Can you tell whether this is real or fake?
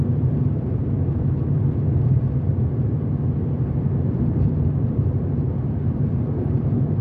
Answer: fake